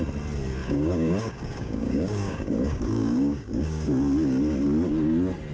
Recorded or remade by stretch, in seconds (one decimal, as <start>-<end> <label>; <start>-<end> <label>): 0.0-0.6 recorded; 0.6-3.9 remade; 3.9-5.5 recorded